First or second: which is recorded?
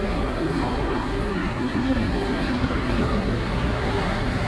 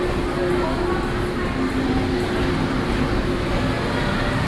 second